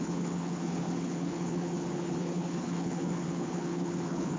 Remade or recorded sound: remade